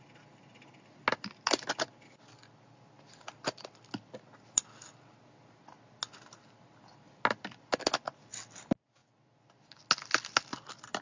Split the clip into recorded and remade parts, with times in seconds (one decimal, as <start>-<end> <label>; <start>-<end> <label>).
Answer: 0.0-11.0 recorded